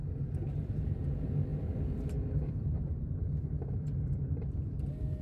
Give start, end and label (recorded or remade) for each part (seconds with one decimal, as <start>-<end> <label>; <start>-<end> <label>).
0.0-0.8 remade; 0.8-1.5 recorded; 1.5-4.6 remade; 4.6-5.2 recorded